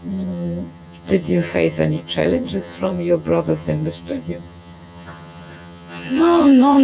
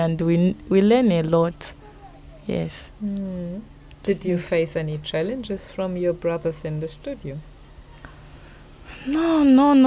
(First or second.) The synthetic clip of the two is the first